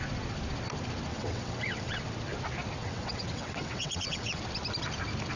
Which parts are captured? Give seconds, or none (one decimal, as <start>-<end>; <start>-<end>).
0.0-1.1; 2.0-2.8; 4.4-5.4